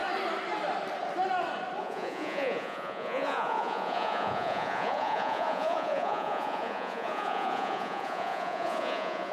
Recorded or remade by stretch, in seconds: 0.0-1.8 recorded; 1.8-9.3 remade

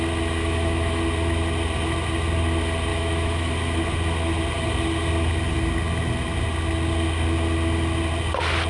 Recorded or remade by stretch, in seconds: 0.0-0.4 recorded; 0.4-1.0 remade; 1.0-2.9 recorded; 2.9-3.5 remade; 3.5-8.7 recorded

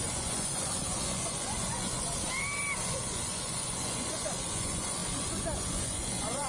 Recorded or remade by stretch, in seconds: 0.0-2.1 remade; 2.1-2.8 recorded; 2.8-6.5 remade

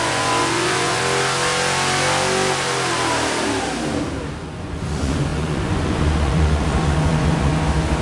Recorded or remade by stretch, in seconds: 0.0-1.0 remade; 1.0-4.4 recorded; 4.4-7.5 remade; 7.5-8.0 recorded

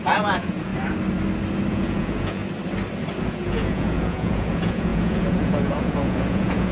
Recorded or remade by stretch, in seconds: 0.0-0.7 remade; 0.7-1.7 recorded; 1.7-2.4 remade; 2.4-3.2 recorded; 3.2-6.7 remade

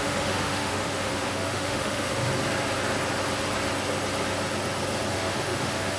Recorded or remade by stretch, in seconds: 0.0-2.2 remade; 2.2-5.1 recorded; 5.1-6.0 remade

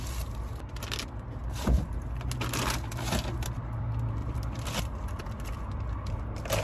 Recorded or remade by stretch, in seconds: 0.0-4.2 recorded; 4.2-5.6 remade; 5.6-6.6 recorded

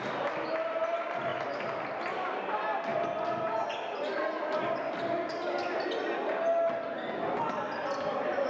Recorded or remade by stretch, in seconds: 0.0-8.5 recorded